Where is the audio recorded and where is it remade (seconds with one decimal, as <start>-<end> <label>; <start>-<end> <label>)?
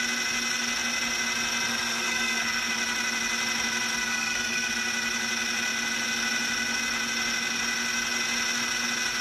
0.0-1.7 recorded; 1.7-2.7 remade; 2.7-4.1 recorded; 4.1-4.7 remade; 4.7-9.2 recorded